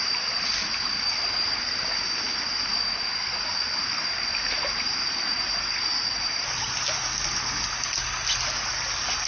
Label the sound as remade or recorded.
recorded